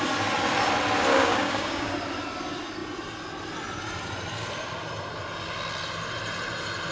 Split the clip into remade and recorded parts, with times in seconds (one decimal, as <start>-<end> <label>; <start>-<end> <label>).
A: 0.0-1.1 recorded; 1.1-1.9 remade; 1.9-6.9 recorded